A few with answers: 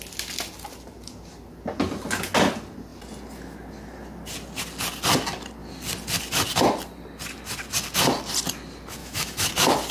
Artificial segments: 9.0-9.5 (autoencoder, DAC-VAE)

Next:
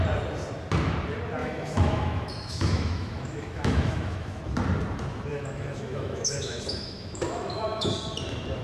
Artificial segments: 1.4-4.4 (autoencoder, DAC-VAE); 5.3-7.9